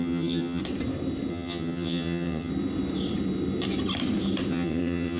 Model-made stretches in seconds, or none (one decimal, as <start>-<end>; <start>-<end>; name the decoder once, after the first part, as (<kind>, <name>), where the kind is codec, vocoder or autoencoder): 0.0-0.6 (vocoder, HiFi-GAN); 1.3-2.5; 4.5-5.2